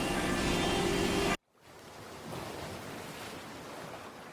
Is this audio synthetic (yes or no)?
no